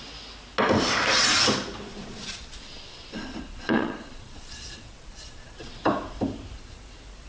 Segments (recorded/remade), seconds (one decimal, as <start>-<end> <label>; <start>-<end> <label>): 0.0-1.9 recorded; 1.9-5.8 remade; 5.8-7.3 recorded